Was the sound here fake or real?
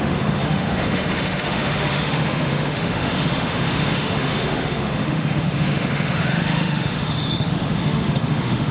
fake